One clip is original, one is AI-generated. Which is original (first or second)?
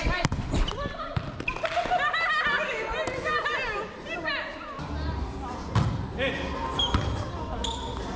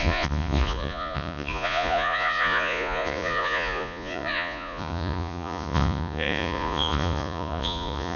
first